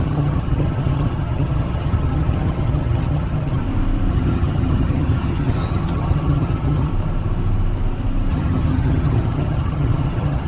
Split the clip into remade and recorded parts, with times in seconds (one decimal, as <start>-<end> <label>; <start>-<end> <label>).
0.0-3.6 remade; 3.6-4.1 recorded; 4.1-6.9 remade; 6.9-8.3 recorded; 8.3-10.5 remade